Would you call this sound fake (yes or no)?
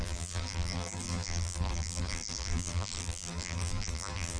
yes